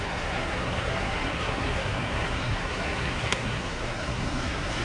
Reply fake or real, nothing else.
fake